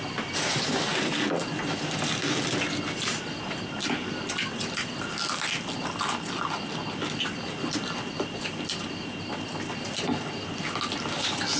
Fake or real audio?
real